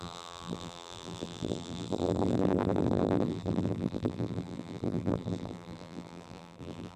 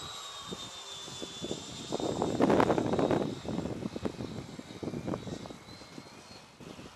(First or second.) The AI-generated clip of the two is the first